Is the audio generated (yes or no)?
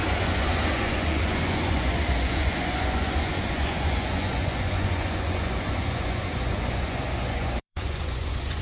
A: yes